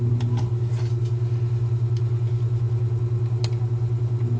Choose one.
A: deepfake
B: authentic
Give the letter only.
B